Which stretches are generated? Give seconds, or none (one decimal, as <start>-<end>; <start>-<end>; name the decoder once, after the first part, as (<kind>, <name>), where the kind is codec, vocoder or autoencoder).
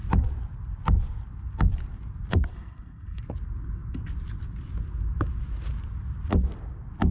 2.5-3.2 (codec, SNAC)